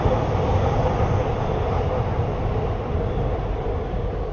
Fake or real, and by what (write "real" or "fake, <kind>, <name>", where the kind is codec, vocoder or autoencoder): real